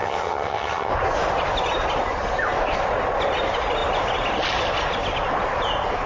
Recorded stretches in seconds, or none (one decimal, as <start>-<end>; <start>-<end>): 0.9-6.1